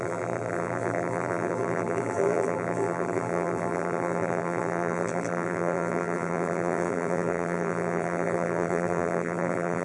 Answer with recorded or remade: remade